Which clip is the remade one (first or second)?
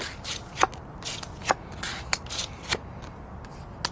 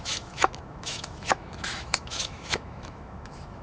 second